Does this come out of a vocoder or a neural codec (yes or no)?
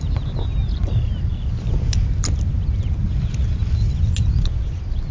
no